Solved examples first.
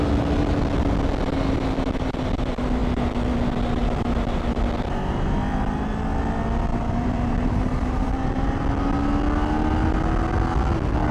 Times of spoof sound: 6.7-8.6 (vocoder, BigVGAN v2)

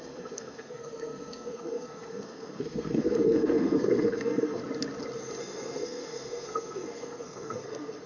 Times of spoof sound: 0.0-4.6 (codec, SNAC); 5.4-8.1

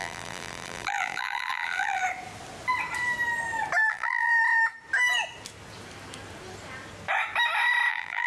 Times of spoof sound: 0.0-2.0 (vocoder, BigVGAN v2); 3.9-4.3; 7.9-8.3

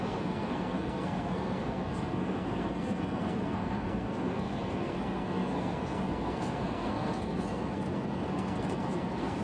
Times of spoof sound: 0.0-9.4 (codec, SNAC)

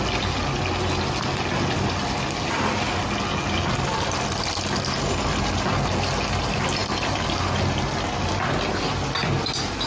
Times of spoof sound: none

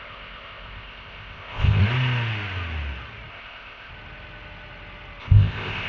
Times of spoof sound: 0.0-1.8 (codec, ZipCodec); 3.3-3.9; 5.2-5.9